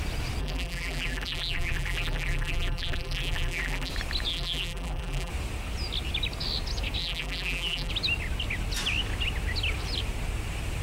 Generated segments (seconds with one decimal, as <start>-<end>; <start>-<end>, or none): 0.4-3.9; 4.3-5.3; 7.0-7.9